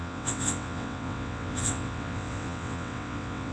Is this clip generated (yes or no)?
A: yes